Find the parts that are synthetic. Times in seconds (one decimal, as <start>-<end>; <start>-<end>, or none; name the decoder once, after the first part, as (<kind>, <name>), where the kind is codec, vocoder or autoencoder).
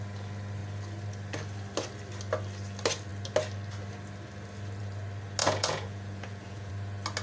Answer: 5.4-6.7 (vocoder, Vocos)